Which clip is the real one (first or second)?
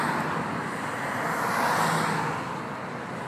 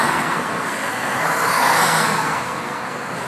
first